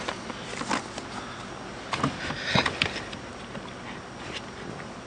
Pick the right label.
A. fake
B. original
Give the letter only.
B